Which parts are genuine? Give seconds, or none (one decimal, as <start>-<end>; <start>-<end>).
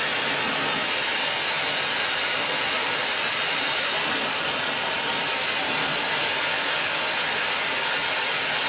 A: 0.0-2.8; 4.6-5.6; 6.1-8.7